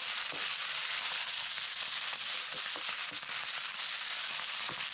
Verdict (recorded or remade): recorded